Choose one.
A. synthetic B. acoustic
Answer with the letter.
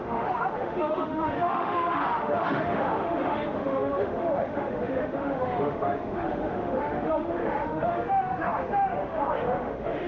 A